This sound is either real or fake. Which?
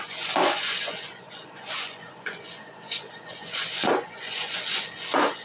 fake